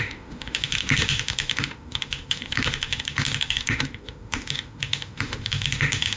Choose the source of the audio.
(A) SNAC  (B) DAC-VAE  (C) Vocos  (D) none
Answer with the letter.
B